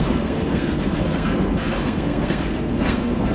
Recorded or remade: remade